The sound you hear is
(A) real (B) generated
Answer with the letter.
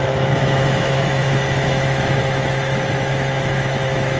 B